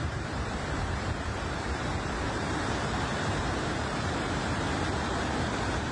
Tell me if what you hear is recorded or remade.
remade